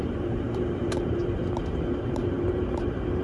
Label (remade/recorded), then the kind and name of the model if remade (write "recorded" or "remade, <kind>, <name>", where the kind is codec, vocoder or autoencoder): remade, vocoder, BigVGAN v2